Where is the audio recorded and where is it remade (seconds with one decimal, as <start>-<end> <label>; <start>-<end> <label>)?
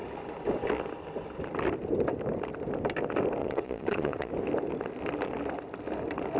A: 0.0-3.4 recorded; 3.4-4.3 remade; 4.3-6.4 recorded